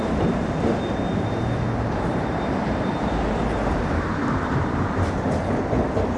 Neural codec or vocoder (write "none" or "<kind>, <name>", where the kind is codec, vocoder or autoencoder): vocoder, BigVGAN v2